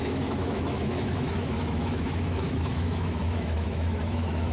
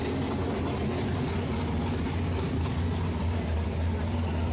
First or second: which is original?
second